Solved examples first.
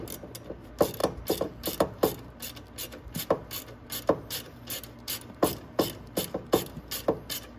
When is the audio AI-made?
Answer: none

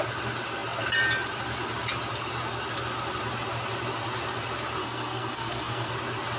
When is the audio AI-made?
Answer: 4.8-5.9 (codec, SNAC)

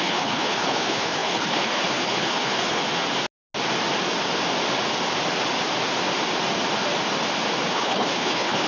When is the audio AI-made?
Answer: 0.0-2.8 (codec, HILCodec); 7.7-8.7

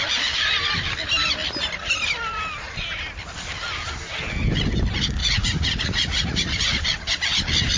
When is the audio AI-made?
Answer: 5.2-6.8 (vocoder, Vocos)

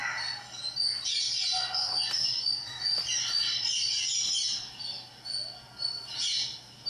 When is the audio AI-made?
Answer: none